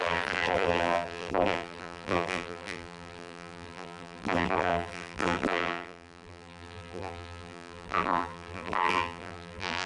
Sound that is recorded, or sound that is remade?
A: remade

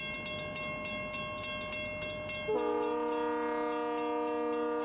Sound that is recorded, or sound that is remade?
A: recorded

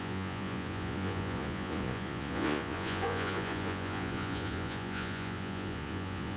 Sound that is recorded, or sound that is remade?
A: remade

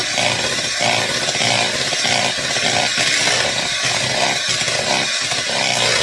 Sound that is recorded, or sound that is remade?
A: recorded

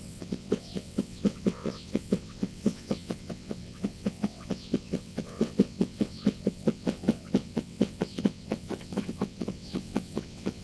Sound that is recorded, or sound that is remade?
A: remade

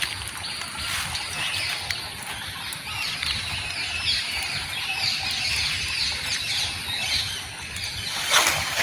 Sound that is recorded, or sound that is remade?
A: recorded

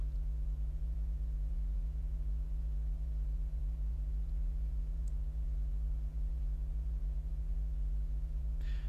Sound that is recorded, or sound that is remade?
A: remade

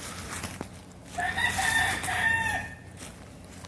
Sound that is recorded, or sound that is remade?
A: recorded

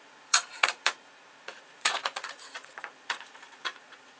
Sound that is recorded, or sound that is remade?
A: remade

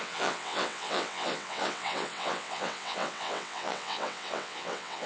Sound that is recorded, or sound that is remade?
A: remade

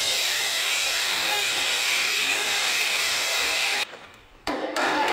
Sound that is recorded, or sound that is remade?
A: remade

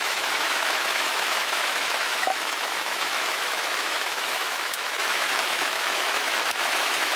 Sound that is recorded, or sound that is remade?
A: remade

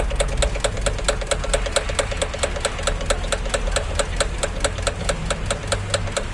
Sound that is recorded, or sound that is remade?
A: recorded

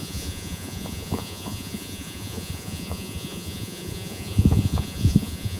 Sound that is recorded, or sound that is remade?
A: remade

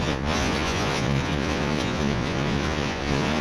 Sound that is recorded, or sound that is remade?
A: remade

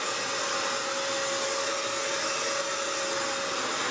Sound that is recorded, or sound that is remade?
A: recorded